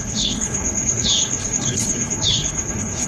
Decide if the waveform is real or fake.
fake